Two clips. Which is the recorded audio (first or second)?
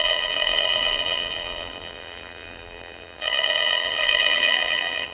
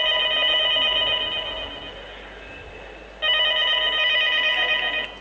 second